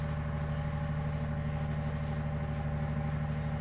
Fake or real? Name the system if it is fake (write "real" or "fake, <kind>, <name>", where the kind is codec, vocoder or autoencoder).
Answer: real